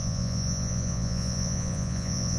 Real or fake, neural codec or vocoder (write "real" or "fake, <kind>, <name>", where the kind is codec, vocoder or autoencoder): fake, vocoder, Vocos